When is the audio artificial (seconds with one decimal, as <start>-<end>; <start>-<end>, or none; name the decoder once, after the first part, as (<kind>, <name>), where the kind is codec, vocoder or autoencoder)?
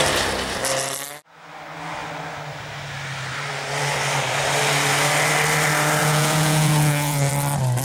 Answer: 6.0-7.3 (vocoder, Vocos)